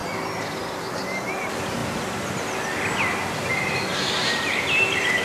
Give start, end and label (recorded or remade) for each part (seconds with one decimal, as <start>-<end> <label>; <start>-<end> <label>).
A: 0.0-3.9 recorded; 3.9-5.2 remade